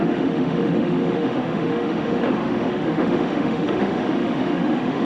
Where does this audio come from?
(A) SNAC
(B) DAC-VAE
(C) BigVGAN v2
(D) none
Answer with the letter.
B